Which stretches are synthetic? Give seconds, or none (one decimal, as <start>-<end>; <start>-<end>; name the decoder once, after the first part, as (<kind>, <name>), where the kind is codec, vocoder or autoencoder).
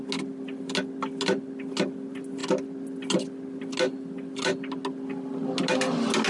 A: none